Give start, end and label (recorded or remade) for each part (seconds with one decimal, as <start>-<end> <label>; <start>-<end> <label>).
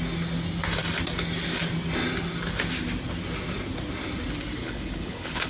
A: 0.0-4.6 recorded; 4.6-5.5 remade